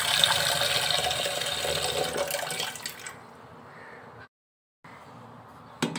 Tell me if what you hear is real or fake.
real